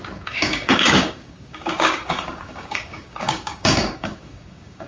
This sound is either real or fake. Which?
fake